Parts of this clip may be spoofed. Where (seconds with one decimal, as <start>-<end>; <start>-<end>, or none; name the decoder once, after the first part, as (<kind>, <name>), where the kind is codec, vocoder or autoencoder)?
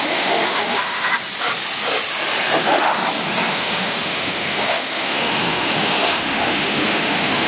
0.0-1.1 (autoencoder, DAC-VAE); 2.6-3.0; 3.5-7.5